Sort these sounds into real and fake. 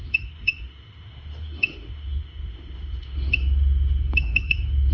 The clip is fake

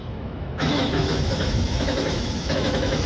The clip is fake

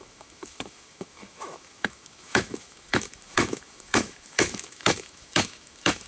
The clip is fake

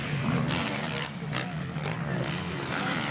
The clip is real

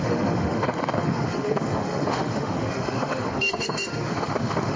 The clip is fake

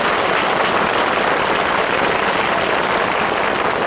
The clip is real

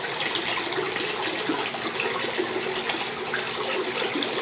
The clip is real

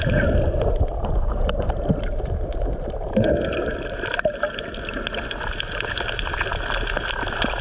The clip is real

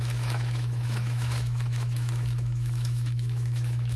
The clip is fake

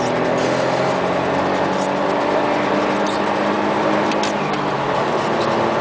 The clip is real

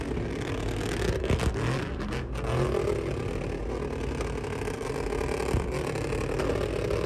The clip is real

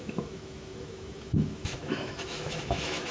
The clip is fake